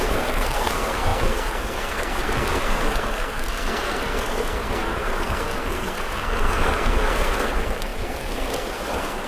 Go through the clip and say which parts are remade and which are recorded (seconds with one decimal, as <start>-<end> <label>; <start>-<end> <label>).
0.0-9.3 remade